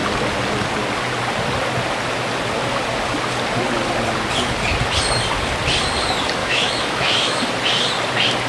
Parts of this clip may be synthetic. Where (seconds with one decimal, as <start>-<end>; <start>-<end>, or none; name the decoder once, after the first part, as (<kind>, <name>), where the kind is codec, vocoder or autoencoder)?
6.4-7.4 (autoencoder, DAC-VAE)